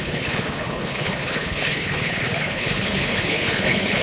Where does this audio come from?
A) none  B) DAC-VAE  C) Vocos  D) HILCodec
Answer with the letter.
D